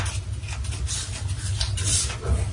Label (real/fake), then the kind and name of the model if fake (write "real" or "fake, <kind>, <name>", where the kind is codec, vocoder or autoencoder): real